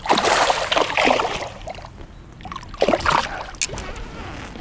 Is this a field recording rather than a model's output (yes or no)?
yes